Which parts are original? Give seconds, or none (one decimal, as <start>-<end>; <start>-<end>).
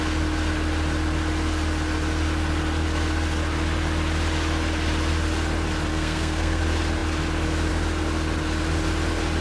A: 0.0-5.9; 6.6-9.4